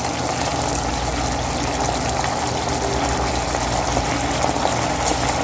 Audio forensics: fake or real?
real